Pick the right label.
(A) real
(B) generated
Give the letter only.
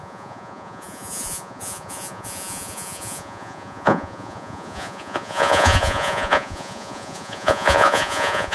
B